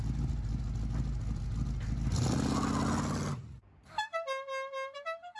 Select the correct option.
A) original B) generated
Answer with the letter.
A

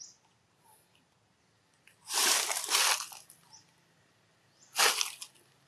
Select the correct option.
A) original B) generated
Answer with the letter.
A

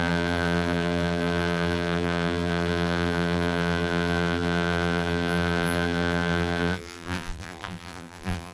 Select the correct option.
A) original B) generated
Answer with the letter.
B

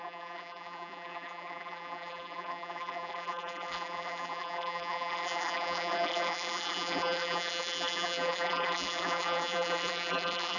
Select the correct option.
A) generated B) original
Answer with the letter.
A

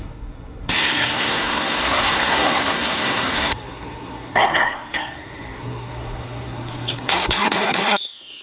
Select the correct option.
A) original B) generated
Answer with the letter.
B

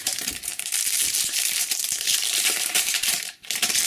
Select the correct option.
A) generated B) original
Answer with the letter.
A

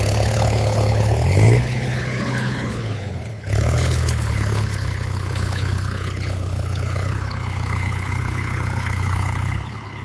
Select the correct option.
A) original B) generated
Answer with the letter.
B